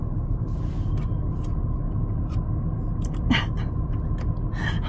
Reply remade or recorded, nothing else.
recorded